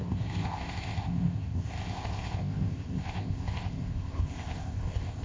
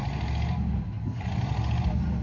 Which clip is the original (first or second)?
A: second